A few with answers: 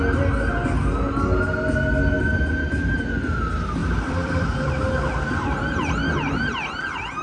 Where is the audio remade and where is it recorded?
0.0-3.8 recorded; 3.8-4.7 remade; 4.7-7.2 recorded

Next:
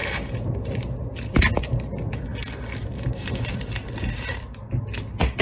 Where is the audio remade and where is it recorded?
0.0-5.4 recorded

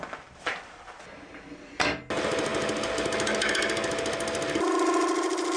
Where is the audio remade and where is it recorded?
0.0-5.6 recorded

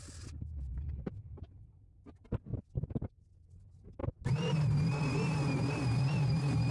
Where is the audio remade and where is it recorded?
0.0-6.7 recorded

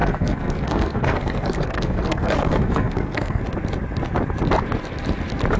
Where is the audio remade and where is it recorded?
0.0-3.4 remade; 3.4-5.6 recorded